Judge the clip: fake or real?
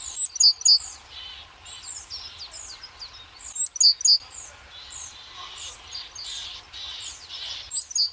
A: real